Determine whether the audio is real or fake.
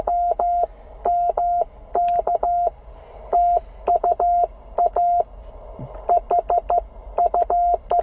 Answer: real